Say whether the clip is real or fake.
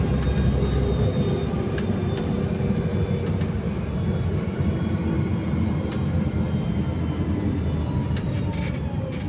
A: real